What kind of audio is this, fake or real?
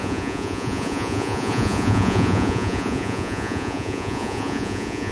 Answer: fake